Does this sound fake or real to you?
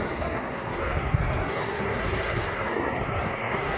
fake